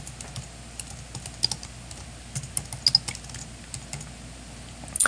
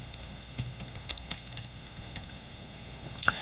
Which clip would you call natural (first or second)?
first